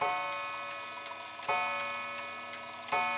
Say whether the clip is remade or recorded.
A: recorded